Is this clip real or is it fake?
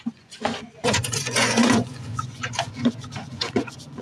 fake